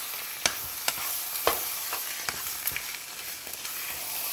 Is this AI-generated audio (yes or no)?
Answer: no